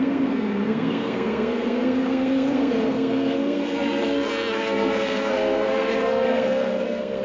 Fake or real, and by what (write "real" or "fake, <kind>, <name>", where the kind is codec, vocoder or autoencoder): fake, codec, SNAC